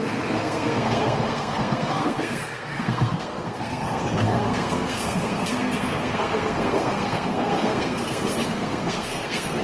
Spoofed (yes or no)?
yes